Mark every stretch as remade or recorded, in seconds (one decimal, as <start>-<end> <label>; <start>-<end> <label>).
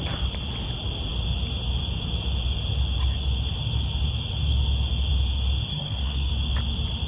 0.0-5.7 recorded; 5.7-6.3 remade; 6.3-7.1 recorded